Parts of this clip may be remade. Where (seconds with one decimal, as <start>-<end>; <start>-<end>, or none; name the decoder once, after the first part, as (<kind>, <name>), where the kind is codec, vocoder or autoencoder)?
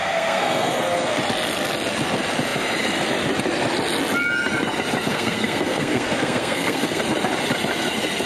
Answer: 0.0-1.2 (codec, SNAC); 5.1-7.0